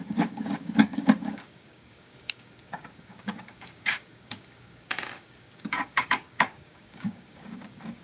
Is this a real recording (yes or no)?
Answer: no